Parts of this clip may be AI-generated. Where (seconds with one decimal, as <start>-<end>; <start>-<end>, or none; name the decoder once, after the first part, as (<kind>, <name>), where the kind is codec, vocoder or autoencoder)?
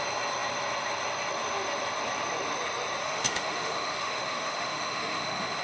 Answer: 3.0-5.6 (autoencoder, DAC-VAE)